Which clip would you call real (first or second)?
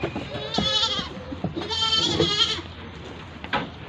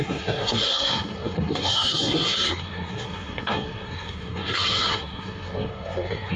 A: first